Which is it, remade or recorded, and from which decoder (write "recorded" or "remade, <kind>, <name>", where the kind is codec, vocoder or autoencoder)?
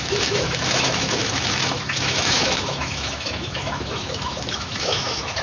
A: remade, autoencoder, DAC-VAE